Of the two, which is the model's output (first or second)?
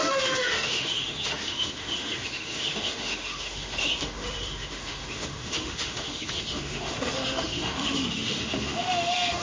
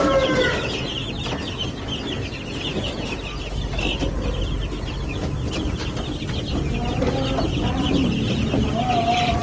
first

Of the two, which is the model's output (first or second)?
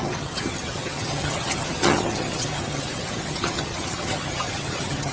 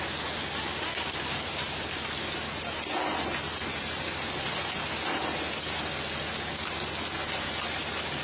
first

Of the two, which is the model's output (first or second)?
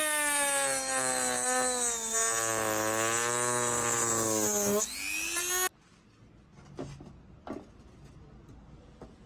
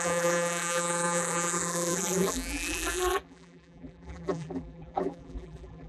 second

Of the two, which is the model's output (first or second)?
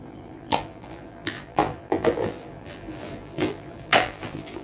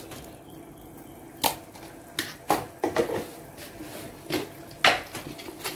first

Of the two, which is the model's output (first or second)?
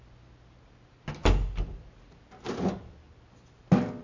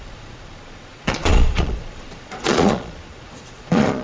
second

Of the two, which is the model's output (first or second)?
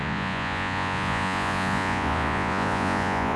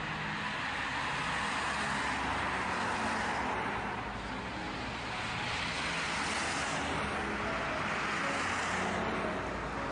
first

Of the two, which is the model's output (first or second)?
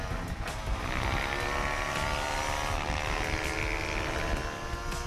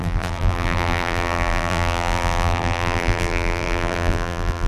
second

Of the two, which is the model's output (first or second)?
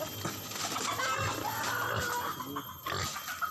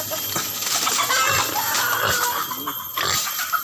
second